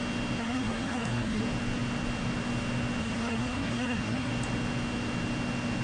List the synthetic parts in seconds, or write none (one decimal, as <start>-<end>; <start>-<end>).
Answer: 0.4-1.4; 3.0-4.3